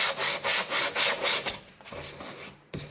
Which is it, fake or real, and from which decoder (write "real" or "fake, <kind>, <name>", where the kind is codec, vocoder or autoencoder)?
fake, vocoder, BigVGAN v2